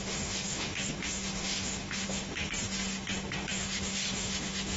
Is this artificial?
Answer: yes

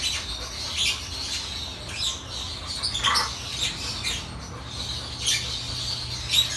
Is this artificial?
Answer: no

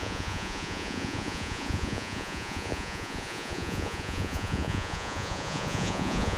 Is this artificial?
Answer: yes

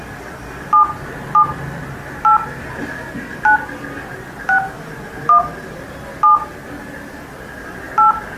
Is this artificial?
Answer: no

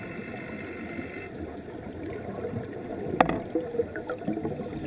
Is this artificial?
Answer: no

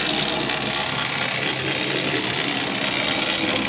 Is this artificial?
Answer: no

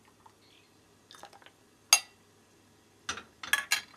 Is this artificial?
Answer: no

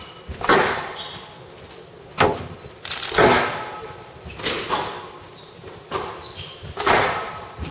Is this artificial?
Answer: no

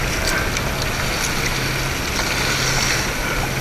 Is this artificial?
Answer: no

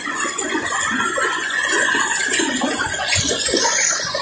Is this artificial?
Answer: yes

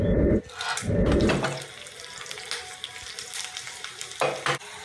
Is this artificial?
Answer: no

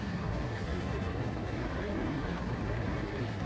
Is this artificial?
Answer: yes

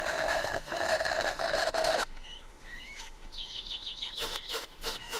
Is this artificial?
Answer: yes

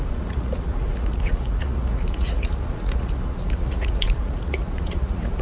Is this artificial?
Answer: yes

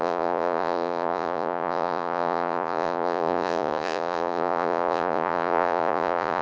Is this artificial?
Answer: yes